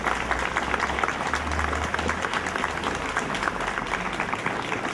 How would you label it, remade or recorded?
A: recorded